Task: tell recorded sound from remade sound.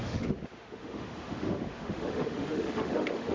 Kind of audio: remade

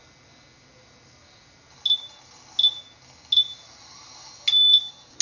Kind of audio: recorded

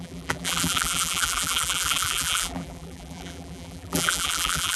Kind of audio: remade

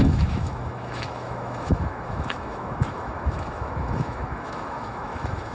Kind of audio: remade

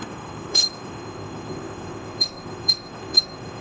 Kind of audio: remade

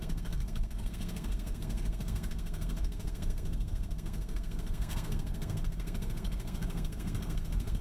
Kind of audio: remade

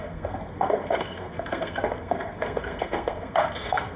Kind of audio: remade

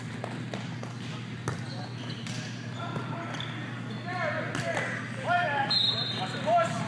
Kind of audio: recorded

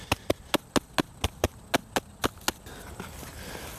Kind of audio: recorded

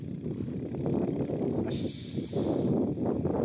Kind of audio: recorded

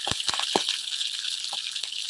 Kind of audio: remade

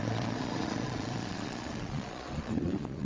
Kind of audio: remade